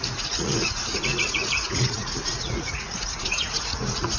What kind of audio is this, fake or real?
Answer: fake